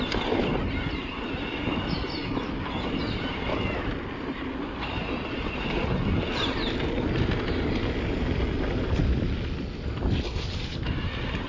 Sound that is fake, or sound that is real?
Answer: real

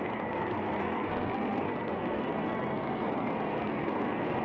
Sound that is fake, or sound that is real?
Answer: fake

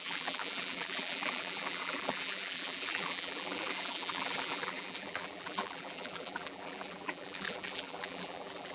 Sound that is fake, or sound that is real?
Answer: fake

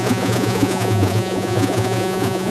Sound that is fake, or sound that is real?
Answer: fake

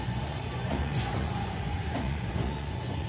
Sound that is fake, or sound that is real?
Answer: fake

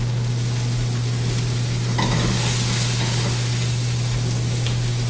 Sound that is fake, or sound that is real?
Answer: real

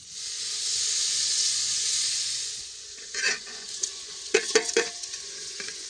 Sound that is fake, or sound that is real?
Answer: fake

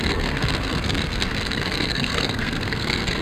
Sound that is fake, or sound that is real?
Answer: fake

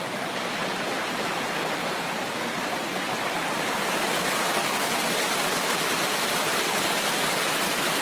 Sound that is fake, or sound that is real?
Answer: real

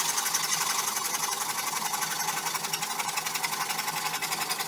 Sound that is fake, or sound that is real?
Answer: real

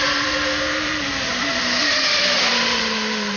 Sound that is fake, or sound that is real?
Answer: fake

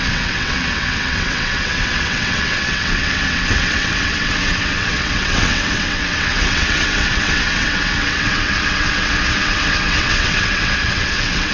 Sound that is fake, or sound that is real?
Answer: fake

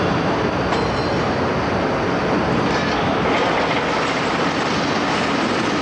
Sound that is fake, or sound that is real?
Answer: real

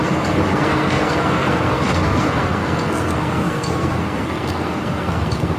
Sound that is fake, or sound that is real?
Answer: fake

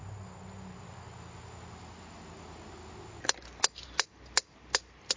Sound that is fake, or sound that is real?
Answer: real